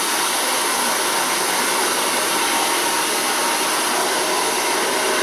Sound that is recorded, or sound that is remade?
recorded